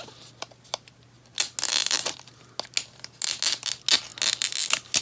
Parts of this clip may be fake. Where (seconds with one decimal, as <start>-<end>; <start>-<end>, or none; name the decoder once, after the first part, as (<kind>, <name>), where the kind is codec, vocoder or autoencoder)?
1.8-2.5 (vocoder, BigVGAN v2)